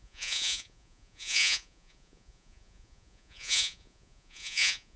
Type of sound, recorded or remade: remade